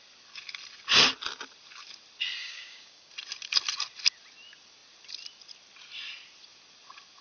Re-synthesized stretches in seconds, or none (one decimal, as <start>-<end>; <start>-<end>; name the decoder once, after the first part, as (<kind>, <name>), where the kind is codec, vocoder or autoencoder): 2.4-3.1 (codec, DAC)